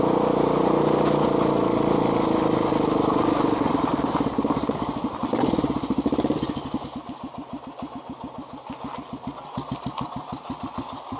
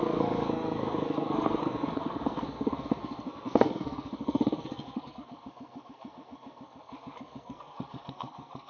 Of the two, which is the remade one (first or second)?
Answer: second